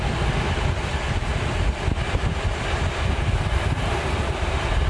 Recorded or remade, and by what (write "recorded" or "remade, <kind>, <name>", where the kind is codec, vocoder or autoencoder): recorded